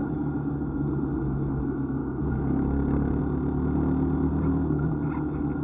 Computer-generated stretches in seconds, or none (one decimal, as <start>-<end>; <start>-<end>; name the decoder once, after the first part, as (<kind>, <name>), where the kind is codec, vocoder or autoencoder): 0.0-0.9 (codec, DAC); 2.0-3.2